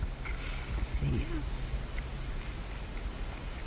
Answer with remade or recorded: recorded